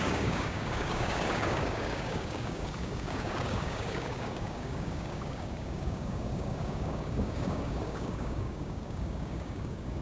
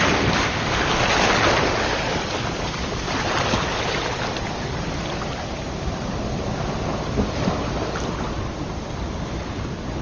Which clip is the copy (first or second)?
first